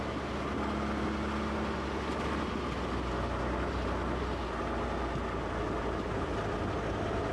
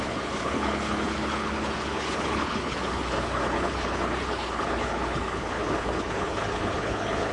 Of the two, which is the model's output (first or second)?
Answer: second